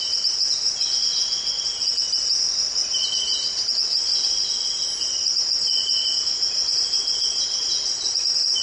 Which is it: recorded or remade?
recorded